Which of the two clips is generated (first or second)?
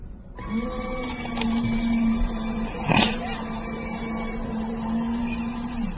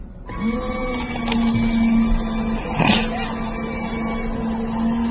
first